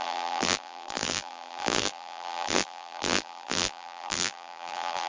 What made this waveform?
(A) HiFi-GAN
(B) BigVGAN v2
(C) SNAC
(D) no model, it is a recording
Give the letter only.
B